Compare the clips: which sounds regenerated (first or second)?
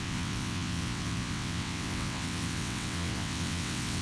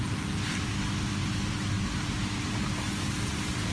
first